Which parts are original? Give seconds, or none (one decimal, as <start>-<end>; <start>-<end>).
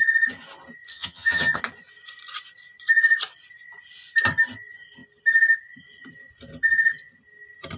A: 0.0-0.9; 1.6-7.8